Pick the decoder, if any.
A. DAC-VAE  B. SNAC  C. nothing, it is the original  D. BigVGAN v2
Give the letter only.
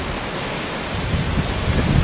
C